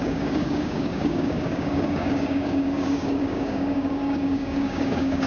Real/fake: fake